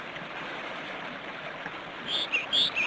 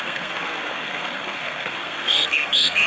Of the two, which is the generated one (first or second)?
second